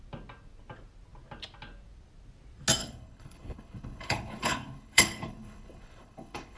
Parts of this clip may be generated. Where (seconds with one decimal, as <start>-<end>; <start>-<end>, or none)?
2.8-6.6